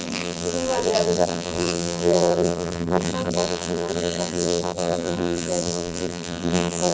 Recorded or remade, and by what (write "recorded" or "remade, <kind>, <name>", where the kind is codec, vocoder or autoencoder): remade, vocoder, BigVGAN v2